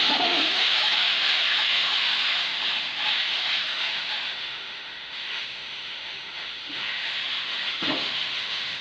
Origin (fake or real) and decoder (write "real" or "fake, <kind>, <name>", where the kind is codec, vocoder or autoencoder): fake, autoencoder, DAC-VAE